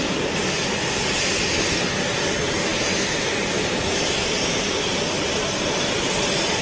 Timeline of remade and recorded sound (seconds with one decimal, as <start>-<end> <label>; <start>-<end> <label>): 0.0-6.6 recorded